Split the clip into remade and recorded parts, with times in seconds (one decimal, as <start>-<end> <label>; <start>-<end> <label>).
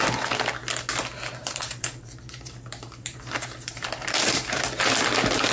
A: 0.0-1.4 recorded; 1.4-4.7 remade; 4.7-5.5 recorded